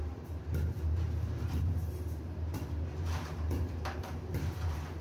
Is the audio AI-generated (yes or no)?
yes